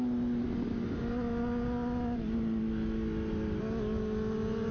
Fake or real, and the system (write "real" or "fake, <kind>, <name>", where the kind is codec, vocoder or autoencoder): real